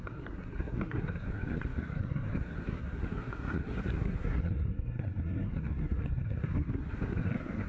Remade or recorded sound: remade